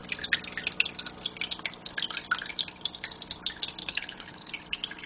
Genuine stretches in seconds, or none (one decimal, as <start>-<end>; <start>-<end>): 0.0-3.8; 4.5-5.1